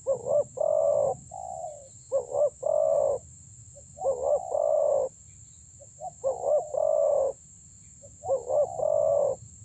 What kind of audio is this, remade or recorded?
recorded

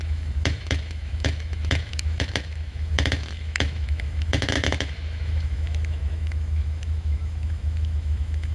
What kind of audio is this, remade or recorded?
remade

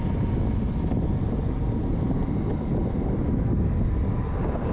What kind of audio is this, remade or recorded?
recorded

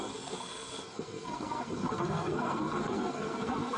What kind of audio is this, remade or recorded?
remade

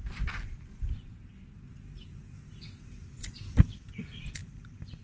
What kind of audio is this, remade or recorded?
recorded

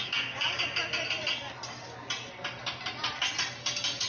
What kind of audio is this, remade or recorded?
recorded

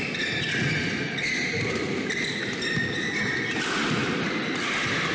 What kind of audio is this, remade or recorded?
recorded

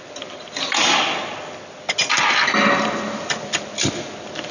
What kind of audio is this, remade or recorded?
recorded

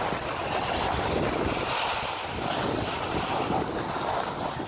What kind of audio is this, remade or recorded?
recorded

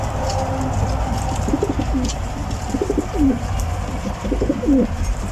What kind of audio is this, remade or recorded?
recorded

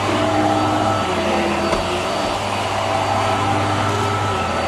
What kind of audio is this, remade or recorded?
recorded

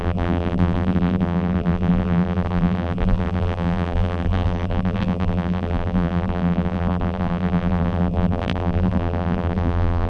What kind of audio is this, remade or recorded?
remade